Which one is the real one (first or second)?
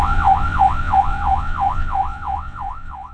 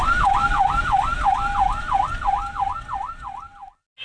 second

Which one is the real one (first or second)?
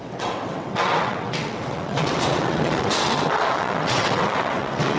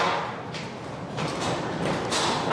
second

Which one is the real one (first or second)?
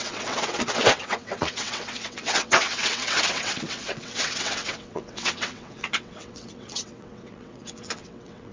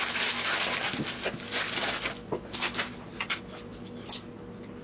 second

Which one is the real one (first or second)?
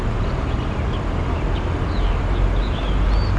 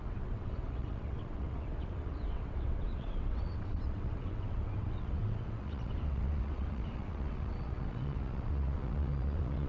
first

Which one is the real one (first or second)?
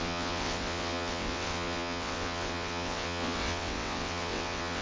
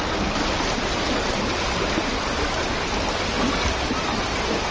second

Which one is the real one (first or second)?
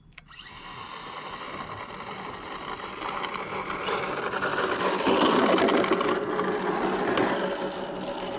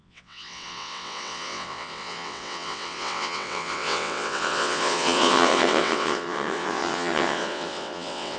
first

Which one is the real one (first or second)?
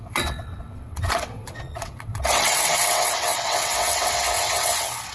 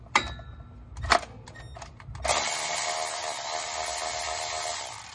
second